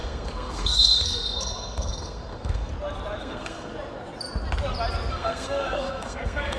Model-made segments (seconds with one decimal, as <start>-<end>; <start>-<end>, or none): 0.0-2.7; 3.2-3.7; 5.1-6.6